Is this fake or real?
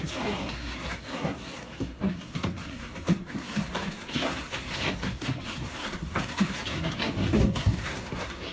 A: fake